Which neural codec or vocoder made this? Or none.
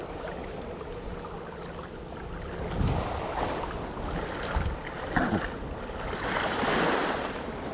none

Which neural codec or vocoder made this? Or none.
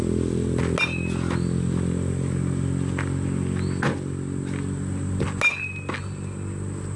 none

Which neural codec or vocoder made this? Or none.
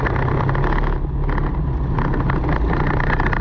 none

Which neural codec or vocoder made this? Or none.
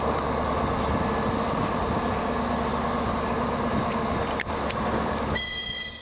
none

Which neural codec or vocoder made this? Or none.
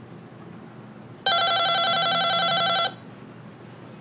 none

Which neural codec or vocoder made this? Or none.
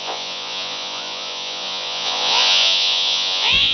vocoder, Vocos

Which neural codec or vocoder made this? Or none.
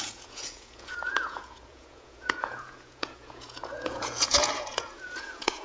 vocoder, Vocos